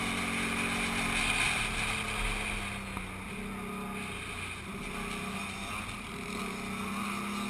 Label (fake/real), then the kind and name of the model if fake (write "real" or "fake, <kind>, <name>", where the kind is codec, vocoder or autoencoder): real